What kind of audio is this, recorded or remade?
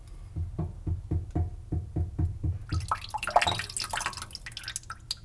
recorded